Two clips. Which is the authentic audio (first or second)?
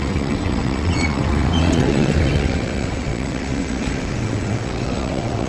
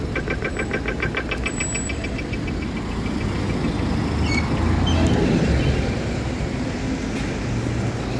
second